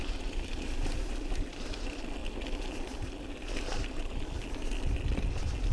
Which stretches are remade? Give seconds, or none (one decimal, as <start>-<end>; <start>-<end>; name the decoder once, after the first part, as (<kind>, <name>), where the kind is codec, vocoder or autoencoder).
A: none

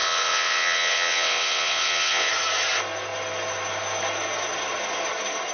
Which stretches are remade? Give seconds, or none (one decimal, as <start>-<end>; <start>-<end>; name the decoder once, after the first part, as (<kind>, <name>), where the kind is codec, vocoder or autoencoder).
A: 0.0-2.3 (vocoder, WaveNeXt)

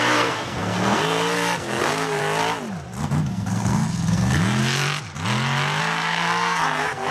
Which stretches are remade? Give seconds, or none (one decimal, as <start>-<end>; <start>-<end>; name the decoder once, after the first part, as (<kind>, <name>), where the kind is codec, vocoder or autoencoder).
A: 0.0-2.2 (codec, SNAC); 3.0-4.6; 5.8-7.1

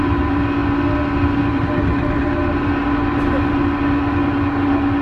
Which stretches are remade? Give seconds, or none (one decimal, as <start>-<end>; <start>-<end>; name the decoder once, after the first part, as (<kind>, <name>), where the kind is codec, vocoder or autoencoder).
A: none

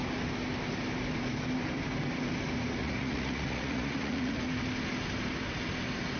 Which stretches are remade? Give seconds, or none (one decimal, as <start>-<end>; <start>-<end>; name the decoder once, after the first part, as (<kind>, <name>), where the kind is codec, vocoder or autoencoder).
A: 2.8-4.4 (vocoder, Vocos)

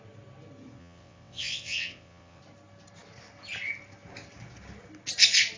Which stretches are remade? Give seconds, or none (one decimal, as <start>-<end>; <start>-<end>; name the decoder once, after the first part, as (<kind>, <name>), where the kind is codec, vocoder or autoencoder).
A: 0.8-2.4 (vocoder, WaveNeXt)

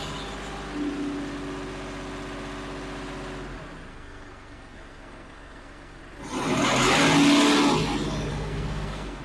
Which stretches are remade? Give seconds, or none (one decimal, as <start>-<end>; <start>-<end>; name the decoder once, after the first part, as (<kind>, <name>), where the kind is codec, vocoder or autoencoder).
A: 3.9-6.0 (codec, SNAC); 8.3-9.2

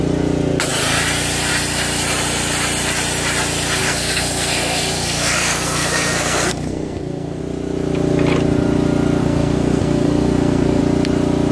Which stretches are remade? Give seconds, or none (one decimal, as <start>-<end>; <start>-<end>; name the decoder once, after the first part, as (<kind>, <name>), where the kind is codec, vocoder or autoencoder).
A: 3.8-7.4 (codec, SNAC); 9.2-10.8